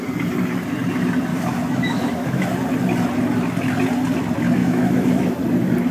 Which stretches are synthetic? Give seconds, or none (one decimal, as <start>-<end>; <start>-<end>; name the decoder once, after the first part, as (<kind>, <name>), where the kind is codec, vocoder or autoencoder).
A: 1.3-2.4 (autoencoder, DAC-VAE); 4.6-5.3